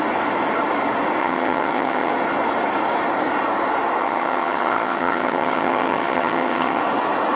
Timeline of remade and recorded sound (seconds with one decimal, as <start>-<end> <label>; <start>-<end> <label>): 0.0-1.2 recorded; 1.2-2.1 remade; 2.1-4.0 recorded; 4.0-6.8 remade; 6.8-7.4 recorded